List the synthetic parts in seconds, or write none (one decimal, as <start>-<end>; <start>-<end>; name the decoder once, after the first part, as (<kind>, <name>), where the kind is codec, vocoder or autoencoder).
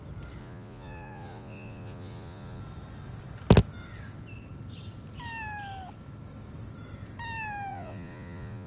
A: 0.4-2.6 (vocoder, Vocos); 7.7-8.7